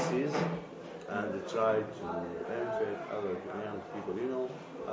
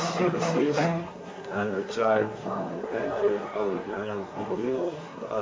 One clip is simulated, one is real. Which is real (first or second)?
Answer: first